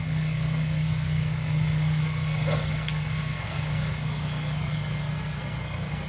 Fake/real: fake